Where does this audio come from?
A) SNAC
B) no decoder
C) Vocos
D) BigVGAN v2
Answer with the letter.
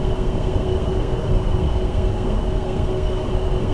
A